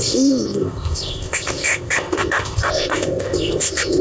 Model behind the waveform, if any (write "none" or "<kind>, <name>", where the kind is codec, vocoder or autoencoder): codec, ZipCodec